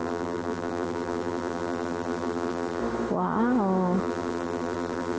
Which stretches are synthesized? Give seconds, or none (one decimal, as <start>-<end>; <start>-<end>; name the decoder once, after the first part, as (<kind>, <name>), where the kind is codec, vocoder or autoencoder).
0.0-2.8 (vocoder, BigVGAN v2); 4.0-5.2